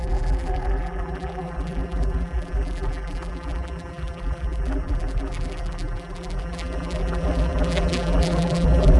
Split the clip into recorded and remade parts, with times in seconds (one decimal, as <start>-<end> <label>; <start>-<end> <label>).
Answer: 0.0-9.0 remade